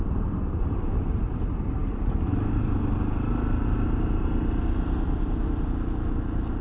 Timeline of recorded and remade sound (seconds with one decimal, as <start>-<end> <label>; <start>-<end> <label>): 0.0-6.6 recorded

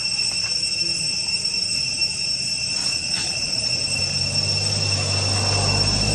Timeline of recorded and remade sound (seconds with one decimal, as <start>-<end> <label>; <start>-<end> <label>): 0.0-2.8 recorded; 2.8-3.6 remade; 3.6-6.1 recorded

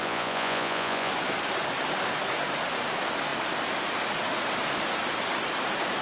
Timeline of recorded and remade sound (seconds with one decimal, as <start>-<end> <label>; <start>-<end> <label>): 0.0-1.1 remade; 1.1-6.0 recorded

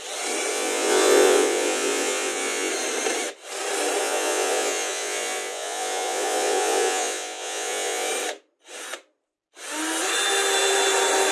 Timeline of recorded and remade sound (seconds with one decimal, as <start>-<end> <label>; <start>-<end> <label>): 0.0-0.5 recorded; 0.5-2.7 remade; 2.7-4.0 recorded; 4.0-8.1 remade; 8.1-11.3 recorded

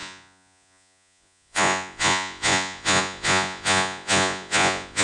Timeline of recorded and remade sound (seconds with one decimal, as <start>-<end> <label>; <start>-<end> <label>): 0.0-5.0 remade

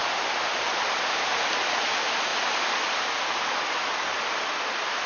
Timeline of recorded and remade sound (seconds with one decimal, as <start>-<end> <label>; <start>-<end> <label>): 0.0-5.1 recorded

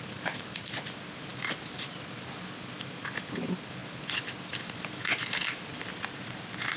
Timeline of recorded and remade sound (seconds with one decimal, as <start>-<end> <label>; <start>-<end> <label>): 0.0-6.8 recorded